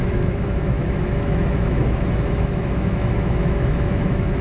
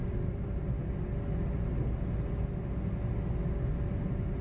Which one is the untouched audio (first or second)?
second